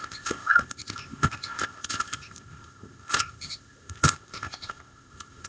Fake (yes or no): yes